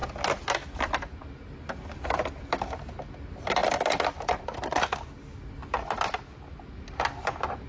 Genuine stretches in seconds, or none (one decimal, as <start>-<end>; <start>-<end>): 0.0-3.6; 4.8-5.6; 7.2-7.7